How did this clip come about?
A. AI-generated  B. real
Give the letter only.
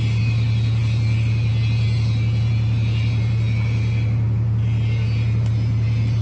B